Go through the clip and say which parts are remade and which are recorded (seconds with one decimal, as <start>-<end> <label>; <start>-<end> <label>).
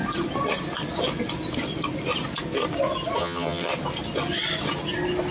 0.0-3.2 recorded; 3.2-3.7 remade; 3.7-5.3 recorded